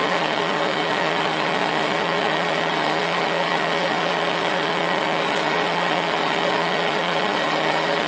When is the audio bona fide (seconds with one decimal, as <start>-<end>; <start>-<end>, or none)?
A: none